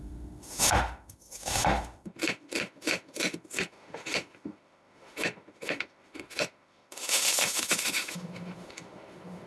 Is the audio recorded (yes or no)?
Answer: no